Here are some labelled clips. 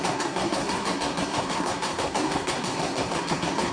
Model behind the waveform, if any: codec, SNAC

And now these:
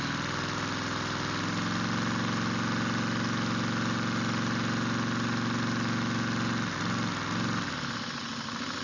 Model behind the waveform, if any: none